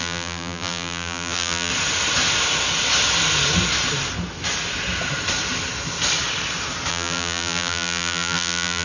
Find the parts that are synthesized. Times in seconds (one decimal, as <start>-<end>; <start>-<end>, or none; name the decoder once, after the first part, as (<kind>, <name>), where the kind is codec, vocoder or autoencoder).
0.0-1.7 (vocoder, BigVGAN v2); 6.9-8.8